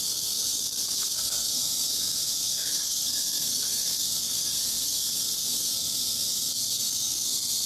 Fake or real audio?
fake